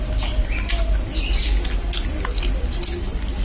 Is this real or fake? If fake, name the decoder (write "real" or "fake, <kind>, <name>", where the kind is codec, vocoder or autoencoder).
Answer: real